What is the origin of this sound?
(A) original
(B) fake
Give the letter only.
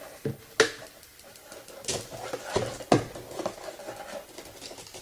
A